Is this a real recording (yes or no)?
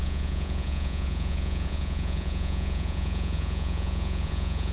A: no